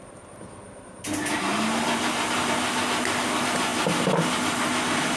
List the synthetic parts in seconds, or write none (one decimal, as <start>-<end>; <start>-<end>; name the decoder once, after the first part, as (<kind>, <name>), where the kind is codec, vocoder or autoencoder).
none